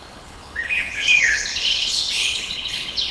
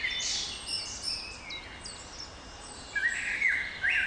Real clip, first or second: second